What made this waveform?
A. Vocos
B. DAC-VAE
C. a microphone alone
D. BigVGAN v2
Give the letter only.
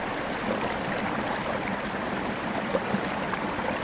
C